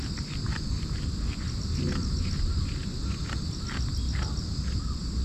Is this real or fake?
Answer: real